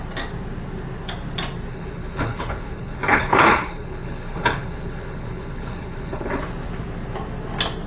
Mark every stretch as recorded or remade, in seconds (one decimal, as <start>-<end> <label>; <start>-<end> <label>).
0.0-1.7 recorded; 1.7-6.4 remade; 6.4-7.9 recorded